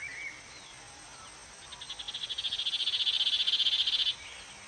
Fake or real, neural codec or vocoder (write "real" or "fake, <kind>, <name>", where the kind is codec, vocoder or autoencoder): real